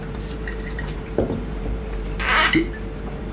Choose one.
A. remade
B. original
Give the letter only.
A